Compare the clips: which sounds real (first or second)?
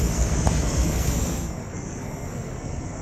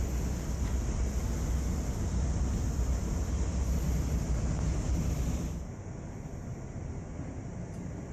second